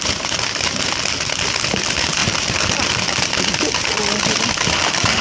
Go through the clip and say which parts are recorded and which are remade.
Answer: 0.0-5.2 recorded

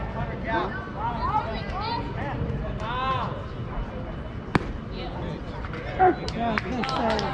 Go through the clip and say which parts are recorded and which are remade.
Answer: 0.0-7.3 recorded

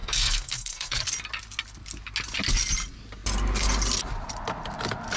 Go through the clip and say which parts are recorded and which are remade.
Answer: 0.0-1.0 remade; 1.0-5.2 recorded

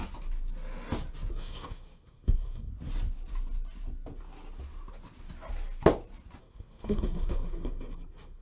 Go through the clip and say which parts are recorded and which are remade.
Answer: 0.0-1.3 recorded; 1.3-2.7 remade; 2.7-6.4 recorded; 6.4-8.4 remade

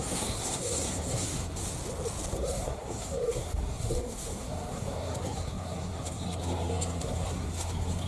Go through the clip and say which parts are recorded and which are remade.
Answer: 0.0-1.6 remade; 1.6-2.3 recorded; 2.3-8.1 remade

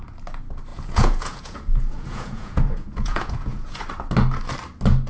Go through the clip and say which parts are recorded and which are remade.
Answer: 0.0-0.7 recorded; 0.7-3.8 remade; 3.8-5.1 recorded

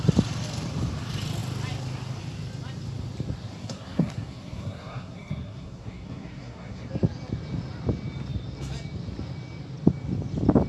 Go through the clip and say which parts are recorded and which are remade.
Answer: 0.0-3.6 recorded; 3.6-6.9 remade; 6.9-10.7 recorded

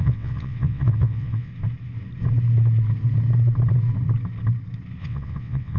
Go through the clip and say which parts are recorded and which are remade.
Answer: 0.0-1.5 remade; 1.5-5.0 recorded; 5.0-5.8 remade